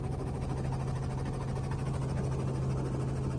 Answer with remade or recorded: recorded